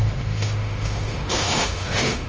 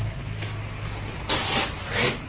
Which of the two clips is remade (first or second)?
first